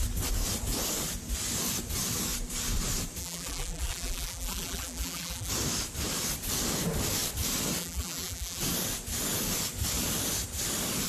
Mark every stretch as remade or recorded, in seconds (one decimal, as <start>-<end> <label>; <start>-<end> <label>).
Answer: 0.0-3.2 recorded; 3.2-5.5 remade; 5.5-7.8 recorded; 7.8-8.6 remade; 8.6-11.1 recorded